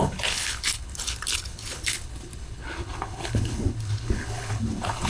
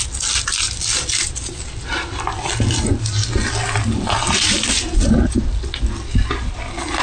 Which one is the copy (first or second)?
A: first